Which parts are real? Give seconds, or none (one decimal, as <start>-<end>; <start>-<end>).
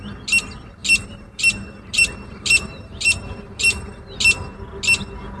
0.0-0.8; 4.0-5.4